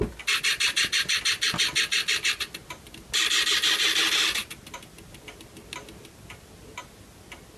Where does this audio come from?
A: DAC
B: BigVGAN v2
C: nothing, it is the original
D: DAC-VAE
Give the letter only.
C